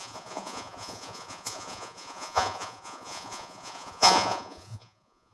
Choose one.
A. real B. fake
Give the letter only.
B